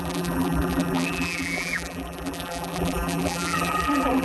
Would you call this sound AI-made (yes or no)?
yes